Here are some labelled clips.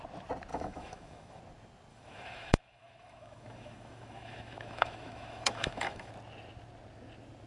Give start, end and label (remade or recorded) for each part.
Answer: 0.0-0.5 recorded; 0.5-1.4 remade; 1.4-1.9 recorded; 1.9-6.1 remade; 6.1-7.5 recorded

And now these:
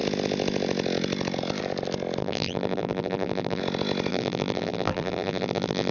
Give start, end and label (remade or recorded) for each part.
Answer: 0.0-2.2 recorded; 2.2-3.6 remade; 3.6-4.1 recorded; 4.1-5.9 remade

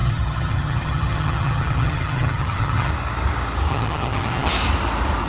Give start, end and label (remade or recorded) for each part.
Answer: 0.0-2.9 remade; 2.9-3.7 recorded; 3.7-4.5 remade; 4.5-5.3 recorded

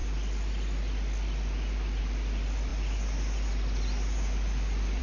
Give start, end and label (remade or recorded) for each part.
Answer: 0.0-5.0 recorded